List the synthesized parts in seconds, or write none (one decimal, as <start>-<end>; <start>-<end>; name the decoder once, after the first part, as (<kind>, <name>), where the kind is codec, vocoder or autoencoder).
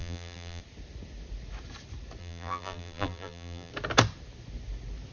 0.0-0.6 (vocoder, BigVGAN v2); 2.2-3.7